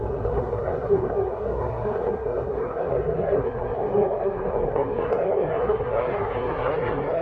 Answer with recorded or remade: remade